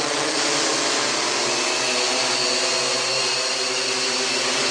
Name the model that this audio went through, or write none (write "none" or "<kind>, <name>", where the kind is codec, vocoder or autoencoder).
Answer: none